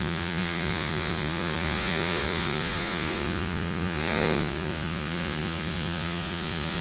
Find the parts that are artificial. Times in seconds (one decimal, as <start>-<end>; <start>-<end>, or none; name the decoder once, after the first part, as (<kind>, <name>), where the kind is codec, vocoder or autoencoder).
0.0-6.8 (vocoder, Vocos)